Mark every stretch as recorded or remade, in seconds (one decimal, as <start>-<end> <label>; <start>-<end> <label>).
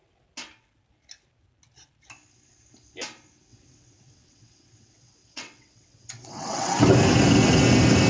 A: 0.0-3.5 recorded; 3.5-6.8 remade; 6.8-8.1 recorded